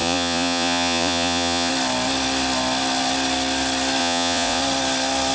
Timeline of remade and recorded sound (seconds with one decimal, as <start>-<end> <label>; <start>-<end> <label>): 0.0-1.7 remade; 1.7-4.0 recorded; 4.0-4.6 remade; 4.6-5.3 recorded

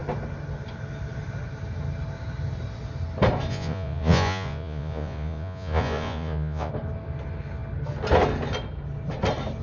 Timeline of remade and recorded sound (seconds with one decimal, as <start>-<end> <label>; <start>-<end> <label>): 0.0-3.5 recorded; 3.5-6.7 remade; 6.7-9.6 recorded

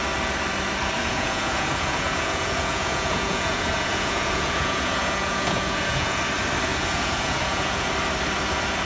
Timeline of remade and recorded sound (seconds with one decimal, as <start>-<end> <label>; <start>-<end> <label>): 0.0-1.0 recorded; 1.0-6.2 remade; 6.2-6.7 recorded; 6.7-7.9 remade; 7.9-8.8 recorded

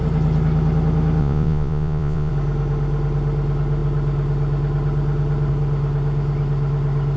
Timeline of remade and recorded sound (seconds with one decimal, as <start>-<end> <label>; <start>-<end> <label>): 0.0-1.2 recorded; 1.2-2.3 remade; 2.3-7.2 recorded

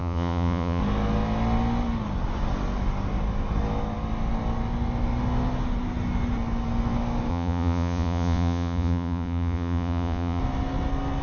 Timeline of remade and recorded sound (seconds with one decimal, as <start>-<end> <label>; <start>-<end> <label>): 0.0-0.8 remade; 0.8-7.3 recorded; 7.3-10.4 remade; 10.4-11.2 recorded

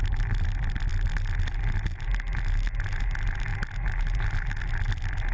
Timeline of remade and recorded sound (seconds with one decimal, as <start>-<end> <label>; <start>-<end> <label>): 0.0-5.3 recorded

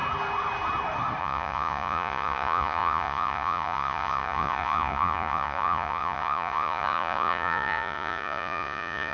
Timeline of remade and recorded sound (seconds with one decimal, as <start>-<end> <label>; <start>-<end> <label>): 0.0-1.2 recorded; 1.2-9.1 remade